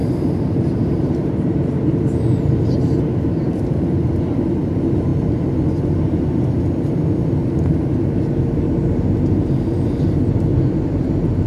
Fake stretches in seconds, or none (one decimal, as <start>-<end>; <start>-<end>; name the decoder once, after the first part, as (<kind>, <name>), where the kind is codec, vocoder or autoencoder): 0.0-4.1 (vocoder, BigVGAN v2); 10.5-11.5